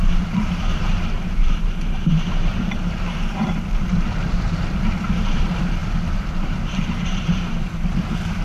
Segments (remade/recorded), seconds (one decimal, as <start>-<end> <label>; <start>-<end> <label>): 0.0-8.4 remade